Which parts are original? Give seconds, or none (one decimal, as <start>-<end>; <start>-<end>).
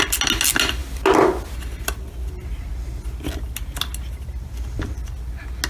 0.0-5.7